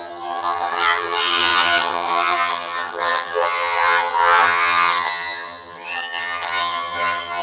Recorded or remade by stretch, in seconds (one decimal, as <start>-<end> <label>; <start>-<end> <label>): 0.0-7.4 remade